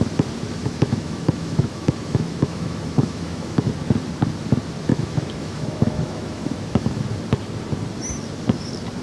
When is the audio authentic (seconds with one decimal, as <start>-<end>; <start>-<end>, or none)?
0.0-0.6; 3.7-4.9; 7.0-9.0